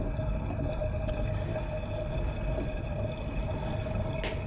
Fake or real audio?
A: real